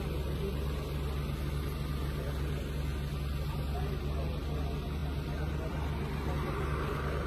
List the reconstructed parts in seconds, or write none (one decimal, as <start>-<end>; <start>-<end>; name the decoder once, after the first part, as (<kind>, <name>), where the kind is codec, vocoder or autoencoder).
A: none